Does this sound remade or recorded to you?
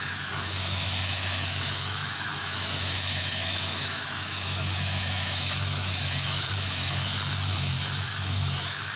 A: remade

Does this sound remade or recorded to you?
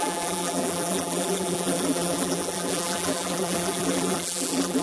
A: remade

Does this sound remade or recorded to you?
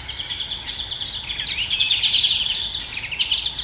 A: recorded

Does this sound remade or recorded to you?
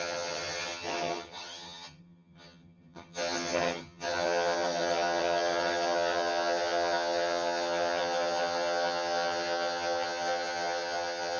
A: remade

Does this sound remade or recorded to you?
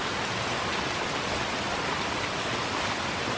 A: recorded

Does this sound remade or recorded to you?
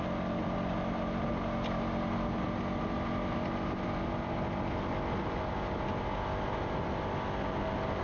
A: recorded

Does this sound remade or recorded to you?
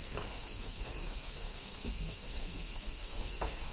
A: remade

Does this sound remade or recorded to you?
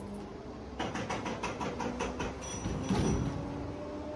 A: recorded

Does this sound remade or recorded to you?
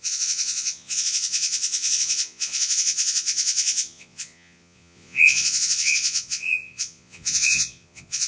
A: remade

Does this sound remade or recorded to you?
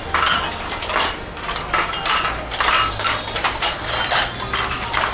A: recorded